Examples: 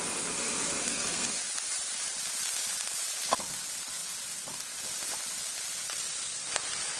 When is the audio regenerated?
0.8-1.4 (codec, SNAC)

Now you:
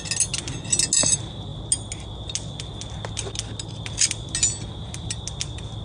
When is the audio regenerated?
none

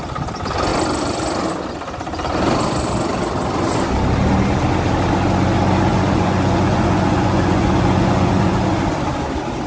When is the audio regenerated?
5.9-8.6 (vocoder, Vocos)

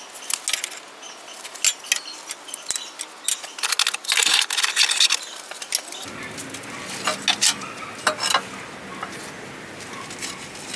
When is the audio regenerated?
none

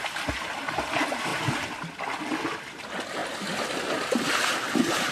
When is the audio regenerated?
1.3-2.0 (vocoder, BigVGAN v2)

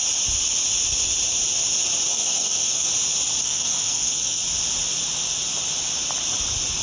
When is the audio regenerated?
2.1-2.9 (codec, SNAC); 3.4-4.4

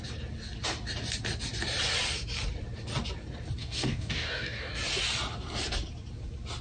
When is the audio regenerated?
3.6-4.7 (codec, DAC)

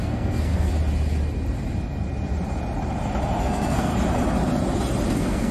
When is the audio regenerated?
0.0-0.7 (codec, SNAC); 3.4-3.9; 5.1-5.5